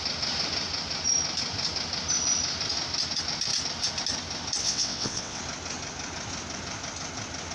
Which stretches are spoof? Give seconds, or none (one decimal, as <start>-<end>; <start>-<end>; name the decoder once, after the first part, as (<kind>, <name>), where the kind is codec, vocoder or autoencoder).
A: 4.6-5.4 (vocoder, WaveNeXt)